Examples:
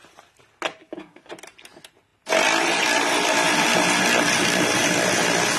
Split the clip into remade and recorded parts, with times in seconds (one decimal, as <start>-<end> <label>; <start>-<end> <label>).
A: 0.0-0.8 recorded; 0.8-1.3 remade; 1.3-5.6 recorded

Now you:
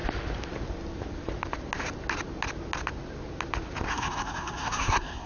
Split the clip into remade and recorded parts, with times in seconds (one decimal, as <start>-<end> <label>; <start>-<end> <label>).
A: 0.0-3.9 recorded; 3.9-5.3 remade

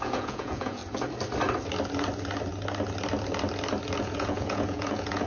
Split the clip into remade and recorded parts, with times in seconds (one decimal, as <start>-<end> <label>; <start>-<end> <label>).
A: 0.0-0.8 remade; 0.8-4.0 recorded; 4.0-5.3 remade

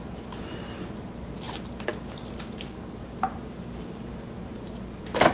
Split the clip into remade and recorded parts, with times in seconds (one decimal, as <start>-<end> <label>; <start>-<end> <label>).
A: 0.0-5.3 recorded

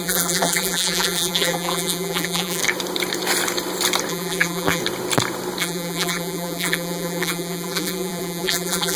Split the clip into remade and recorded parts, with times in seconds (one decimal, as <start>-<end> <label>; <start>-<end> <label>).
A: 0.0-2.6 remade; 2.6-4.1 recorded; 4.1-4.8 remade; 4.8-5.6 recorded; 5.6-9.0 remade

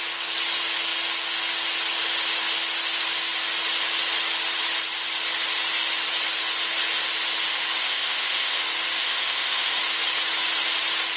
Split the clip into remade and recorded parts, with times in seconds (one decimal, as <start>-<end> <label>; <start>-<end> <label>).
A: 0.0-7.8 recorded; 7.8-8.6 remade; 8.6-9.0 recorded; 9.0-9.7 remade; 9.7-11.2 recorded